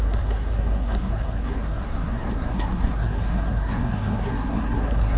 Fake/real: fake